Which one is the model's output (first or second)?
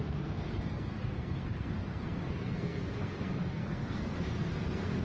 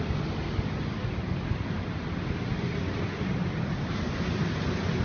first